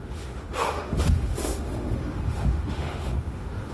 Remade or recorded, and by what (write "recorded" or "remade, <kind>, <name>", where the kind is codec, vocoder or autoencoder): remade, autoencoder, DAC-VAE